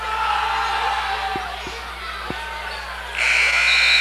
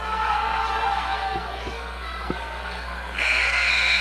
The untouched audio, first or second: first